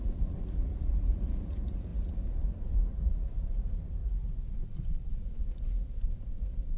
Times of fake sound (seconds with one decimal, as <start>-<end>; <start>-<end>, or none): 0.0-6.8